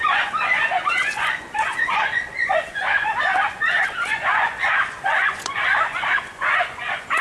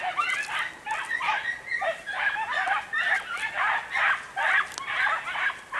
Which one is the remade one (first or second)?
first